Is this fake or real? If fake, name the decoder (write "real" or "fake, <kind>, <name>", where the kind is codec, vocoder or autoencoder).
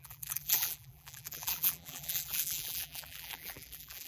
fake, vocoder, BigVGAN v2